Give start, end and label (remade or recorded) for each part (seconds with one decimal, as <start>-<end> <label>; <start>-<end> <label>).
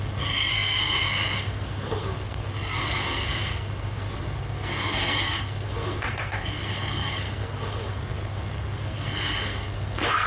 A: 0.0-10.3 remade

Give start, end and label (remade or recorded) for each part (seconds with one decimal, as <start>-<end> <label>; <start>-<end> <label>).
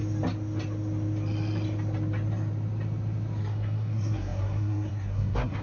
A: 0.0-3.4 recorded; 3.4-5.6 remade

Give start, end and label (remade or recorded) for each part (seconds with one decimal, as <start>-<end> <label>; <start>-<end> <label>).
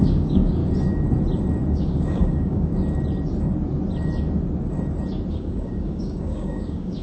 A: 0.0-0.6 remade; 0.6-1.7 recorded; 1.7-2.7 remade; 2.7-5.3 recorded; 5.3-7.0 remade